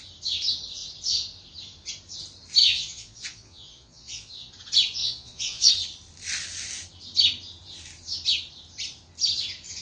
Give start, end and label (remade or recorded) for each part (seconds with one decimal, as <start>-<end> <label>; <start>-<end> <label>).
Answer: 0.0-2.6 recorded; 2.6-4.5 remade; 4.5-5.0 recorded; 5.0-5.7 remade; 5.7-9.8 recorded